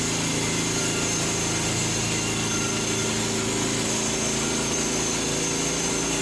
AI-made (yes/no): no